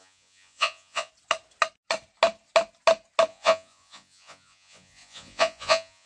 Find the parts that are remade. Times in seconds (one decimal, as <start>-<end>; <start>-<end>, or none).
0.0-1.1; 3.3-6.1